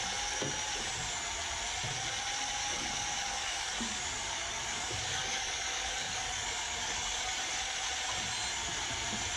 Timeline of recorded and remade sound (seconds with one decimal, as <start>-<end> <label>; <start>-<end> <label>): 0.0-2.6 recorded; 2.6-7.6 remade; 7.6-9.4 recorded

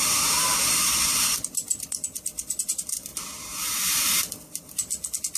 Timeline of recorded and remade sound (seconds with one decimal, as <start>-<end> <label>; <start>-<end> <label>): 0.0-5.4 recorded

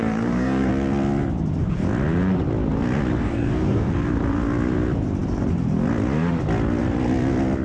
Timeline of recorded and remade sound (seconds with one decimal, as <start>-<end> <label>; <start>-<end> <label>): 0.0-0.7 remade; 0.7-3.2 recorded; 3.2-3.9 remade; 3.9-7.6 recorded

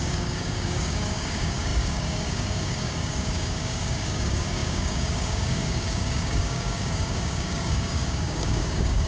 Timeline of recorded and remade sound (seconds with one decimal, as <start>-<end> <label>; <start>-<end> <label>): 0.0-9.1 remade

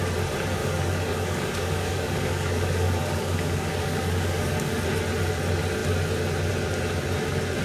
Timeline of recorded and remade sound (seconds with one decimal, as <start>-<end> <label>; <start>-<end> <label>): 0.0-0.6 recorded; 0.6-4.7 remade; 4.7-7.6 recorded

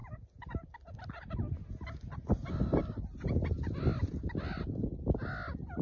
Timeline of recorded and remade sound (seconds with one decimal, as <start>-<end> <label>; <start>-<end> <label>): 0.0-5.8 recorded

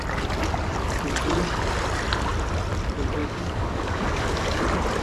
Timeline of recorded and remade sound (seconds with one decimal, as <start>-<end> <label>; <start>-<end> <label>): 0.0-3.2 recorded; 3.2-4.6 remade; 4.6-5.0 recorded

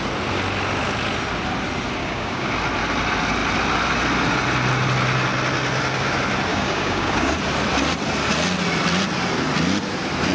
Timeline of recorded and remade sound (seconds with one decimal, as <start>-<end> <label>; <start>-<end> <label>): 0.0-2.0 recorded; 2.0-2.5 remade; 2.5-6.5 recorded; 6.5-7.3 remade; 7.3-10.3 recorded